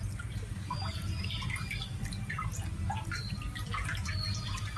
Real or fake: real